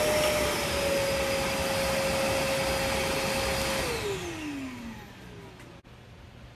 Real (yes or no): yes